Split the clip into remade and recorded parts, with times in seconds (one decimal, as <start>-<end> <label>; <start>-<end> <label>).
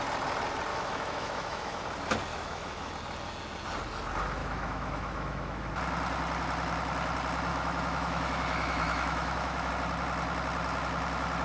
0.0-0.7 recorded; 0.7-1.8 remade; 1.8-2.3 recorded; 2.3-2.9 remade; 2.9-4.4 recorded; 4.4-5.7 remade; 5.7-7.5 recorded; 7.5-9.7 remade; 9.7-11.4 recorded